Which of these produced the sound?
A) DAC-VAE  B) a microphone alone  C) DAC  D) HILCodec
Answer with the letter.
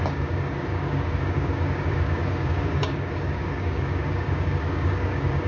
C